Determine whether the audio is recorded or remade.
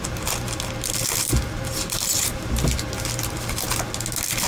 recorded